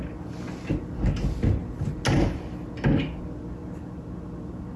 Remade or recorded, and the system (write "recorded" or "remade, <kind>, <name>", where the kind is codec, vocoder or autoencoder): recorded